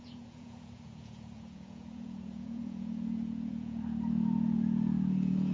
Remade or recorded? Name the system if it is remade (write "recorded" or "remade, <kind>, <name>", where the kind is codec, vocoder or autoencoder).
remade, vocoder, Vocos